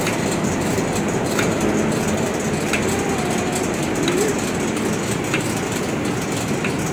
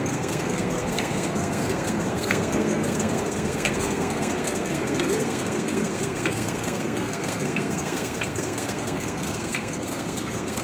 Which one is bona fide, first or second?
first